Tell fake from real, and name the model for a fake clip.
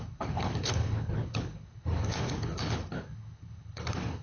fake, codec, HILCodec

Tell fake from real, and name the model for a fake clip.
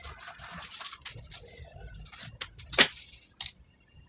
real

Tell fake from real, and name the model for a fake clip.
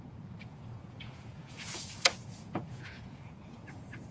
fake, vocoder, Vocos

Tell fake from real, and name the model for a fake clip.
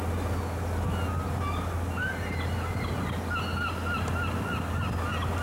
real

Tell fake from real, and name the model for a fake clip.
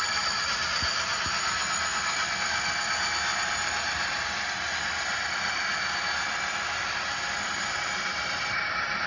real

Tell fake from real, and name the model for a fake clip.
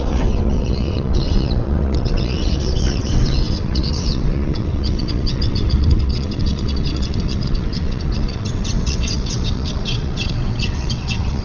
fake, vocoder, WaveNeXt